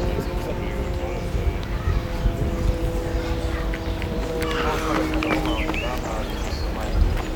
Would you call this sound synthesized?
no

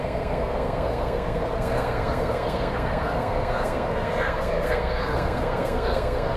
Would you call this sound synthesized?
yes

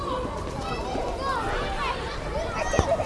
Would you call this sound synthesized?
no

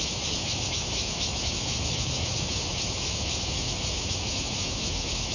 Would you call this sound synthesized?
yes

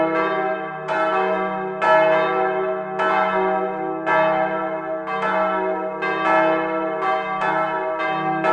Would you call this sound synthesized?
no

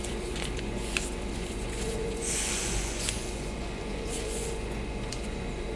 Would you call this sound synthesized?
yes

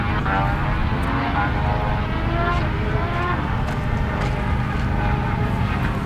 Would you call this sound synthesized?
no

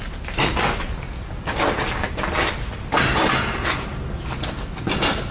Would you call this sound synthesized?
no